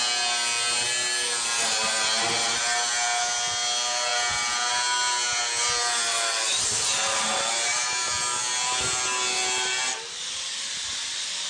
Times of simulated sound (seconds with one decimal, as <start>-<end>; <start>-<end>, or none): 6.1-7.5